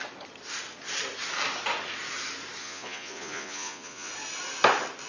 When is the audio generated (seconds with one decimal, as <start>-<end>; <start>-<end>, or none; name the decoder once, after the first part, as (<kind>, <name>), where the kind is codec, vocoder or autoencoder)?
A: 2.6-4.1 (vocoder, Vocos)